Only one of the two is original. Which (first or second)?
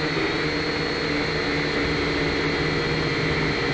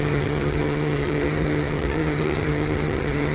first